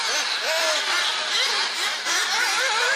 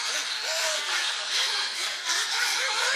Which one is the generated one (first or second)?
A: second